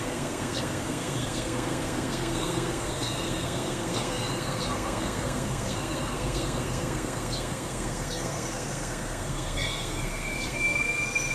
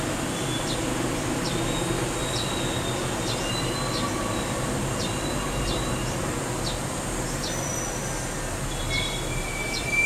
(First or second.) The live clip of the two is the second